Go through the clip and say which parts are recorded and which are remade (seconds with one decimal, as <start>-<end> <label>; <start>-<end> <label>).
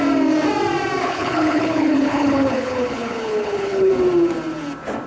0.0-1.0 recorded; 1.0-3.9 remade; 3.9-5.1 recorded